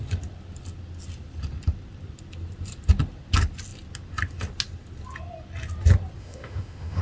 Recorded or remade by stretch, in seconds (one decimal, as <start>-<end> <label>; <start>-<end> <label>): 0.0-6.2 recorded; 6.2-7.0 remade